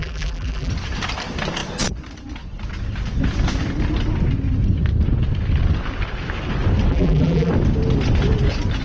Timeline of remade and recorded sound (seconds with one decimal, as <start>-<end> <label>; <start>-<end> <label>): 0.0-0.7 remade; 0.7-6.9 recorded; 6.9-7.5 remade; 7.5-8.8 recorded